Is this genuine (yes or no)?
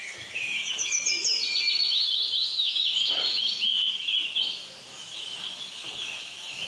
no